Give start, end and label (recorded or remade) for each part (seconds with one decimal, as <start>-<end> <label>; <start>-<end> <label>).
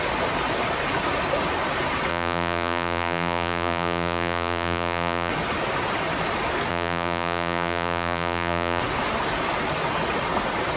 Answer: 0.0-2.1 recorded; 2.1-5.3 remade; 5.3-6.7 recorded; 6.7-8.8 remade; 8.8-10.8 recorded